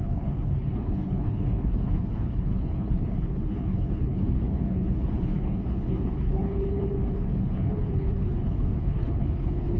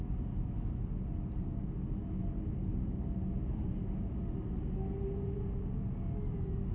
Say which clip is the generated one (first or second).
first